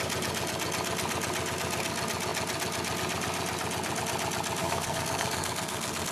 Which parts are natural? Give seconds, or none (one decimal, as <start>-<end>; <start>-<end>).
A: 0.0-4.6